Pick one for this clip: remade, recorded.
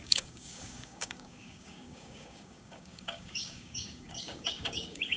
remade